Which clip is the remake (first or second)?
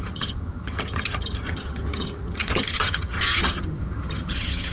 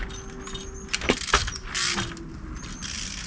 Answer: first